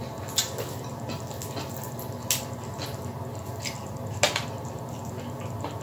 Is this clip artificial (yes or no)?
no